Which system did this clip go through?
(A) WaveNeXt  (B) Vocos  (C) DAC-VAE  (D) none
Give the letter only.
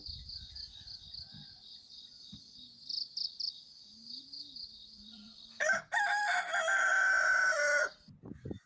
D